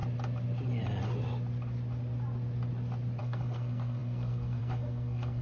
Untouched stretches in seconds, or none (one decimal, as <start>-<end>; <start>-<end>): 0.0-3.2